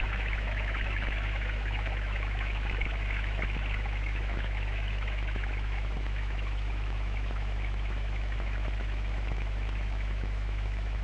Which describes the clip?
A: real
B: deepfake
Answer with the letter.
B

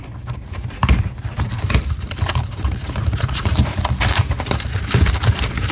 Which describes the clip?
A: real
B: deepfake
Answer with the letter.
B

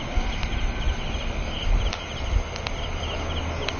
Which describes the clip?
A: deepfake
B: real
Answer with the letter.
B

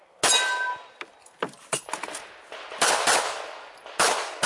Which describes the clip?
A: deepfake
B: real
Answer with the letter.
B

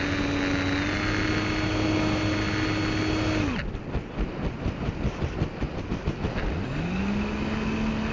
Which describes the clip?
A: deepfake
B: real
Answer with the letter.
B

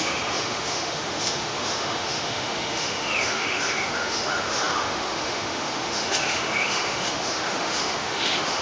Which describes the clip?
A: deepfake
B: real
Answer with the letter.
A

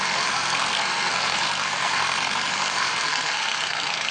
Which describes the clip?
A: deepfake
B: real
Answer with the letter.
A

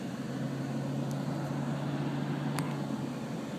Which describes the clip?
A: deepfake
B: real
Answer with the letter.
B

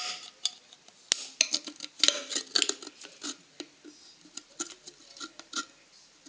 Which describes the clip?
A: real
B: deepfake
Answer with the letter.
A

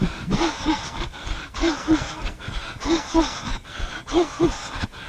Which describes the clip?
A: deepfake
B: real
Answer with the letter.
A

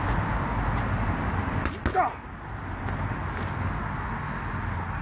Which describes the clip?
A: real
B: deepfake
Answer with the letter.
A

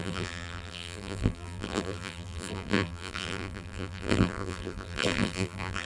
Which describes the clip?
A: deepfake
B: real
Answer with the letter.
A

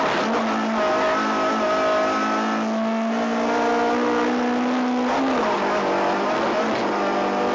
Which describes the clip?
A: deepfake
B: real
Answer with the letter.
B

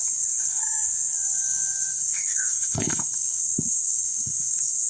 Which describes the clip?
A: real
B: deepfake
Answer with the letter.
B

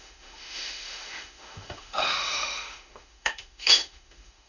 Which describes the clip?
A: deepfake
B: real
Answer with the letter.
A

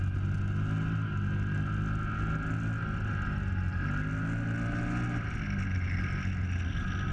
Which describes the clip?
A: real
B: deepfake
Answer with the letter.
A